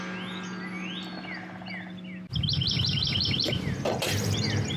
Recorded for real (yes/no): yes